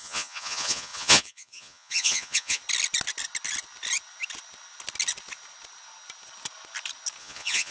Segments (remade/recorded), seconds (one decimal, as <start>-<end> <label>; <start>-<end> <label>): 0.0-2.6 remade; 2.6-7.2 recorded; 7.2-7.7 remade